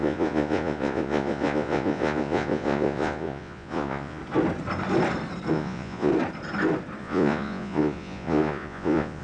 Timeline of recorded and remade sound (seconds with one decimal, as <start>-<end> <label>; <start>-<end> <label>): 0.0-4.2 remade; 4.2-5.5 recorded; 5.5-6.1 remade; 6.1-7.0 recorded; 7.0-9.2 remade